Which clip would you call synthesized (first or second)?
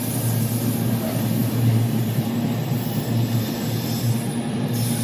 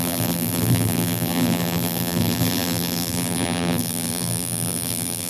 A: second